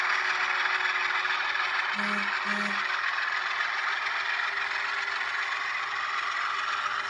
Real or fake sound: real